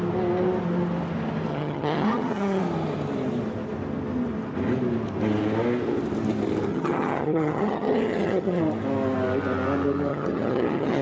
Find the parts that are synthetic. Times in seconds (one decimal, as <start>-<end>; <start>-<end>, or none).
1.5-2.6; 6.7-8.6; 10.1-11.0